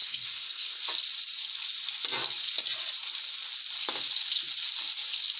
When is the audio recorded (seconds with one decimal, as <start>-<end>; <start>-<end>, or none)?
0.8-5.4